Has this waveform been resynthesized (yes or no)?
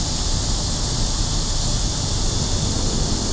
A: no